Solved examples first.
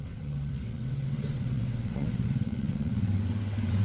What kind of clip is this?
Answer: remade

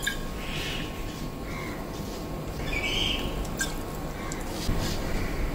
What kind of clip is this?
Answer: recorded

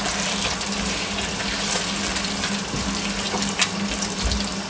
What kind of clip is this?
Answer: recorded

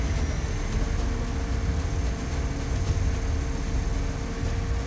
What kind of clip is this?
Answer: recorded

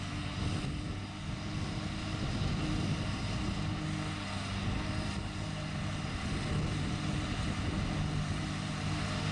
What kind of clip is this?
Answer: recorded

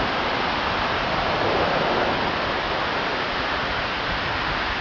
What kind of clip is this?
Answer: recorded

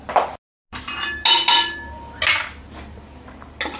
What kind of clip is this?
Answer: recorded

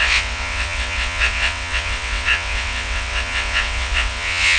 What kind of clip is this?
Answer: remade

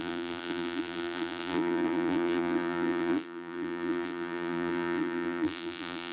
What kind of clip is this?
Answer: remade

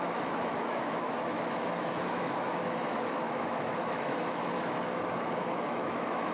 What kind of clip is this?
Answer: remade